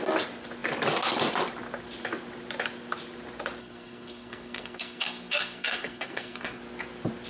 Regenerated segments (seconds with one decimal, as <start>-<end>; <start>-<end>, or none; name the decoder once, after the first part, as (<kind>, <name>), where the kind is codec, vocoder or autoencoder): 3.6-6.6 (codec, SNAC)